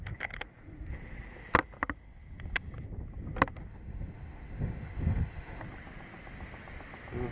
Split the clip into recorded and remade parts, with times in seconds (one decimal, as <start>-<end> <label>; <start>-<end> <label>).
0.0-3.7 recorded; 3.7-5.6 remade; 5.6-7.3 recorded